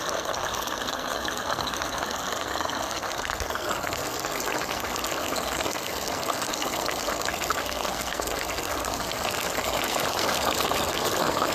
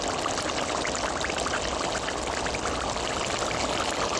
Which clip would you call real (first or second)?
second